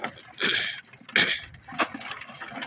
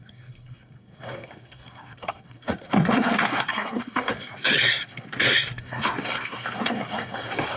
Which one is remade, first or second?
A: second